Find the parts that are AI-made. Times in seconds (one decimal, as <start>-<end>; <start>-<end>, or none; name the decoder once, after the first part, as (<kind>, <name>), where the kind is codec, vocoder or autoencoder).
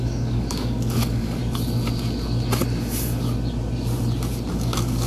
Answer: 0.0-1.4 (codec, DAC); 4.5-5.1